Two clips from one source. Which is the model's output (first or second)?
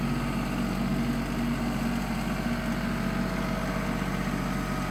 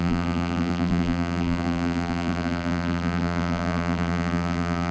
second